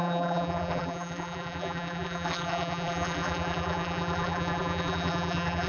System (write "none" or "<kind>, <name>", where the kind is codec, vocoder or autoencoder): vocoder, BigVGAN v2